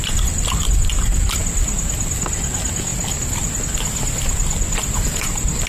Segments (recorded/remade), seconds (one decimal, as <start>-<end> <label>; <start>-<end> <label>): 0.0-5.7 recorded